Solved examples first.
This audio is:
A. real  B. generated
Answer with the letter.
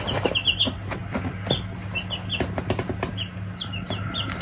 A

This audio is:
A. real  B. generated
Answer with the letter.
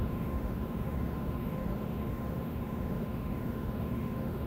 B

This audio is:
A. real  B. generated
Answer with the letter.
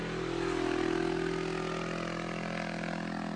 A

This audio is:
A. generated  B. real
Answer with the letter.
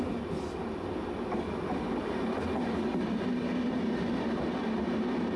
B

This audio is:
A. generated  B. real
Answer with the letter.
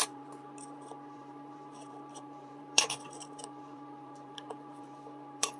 A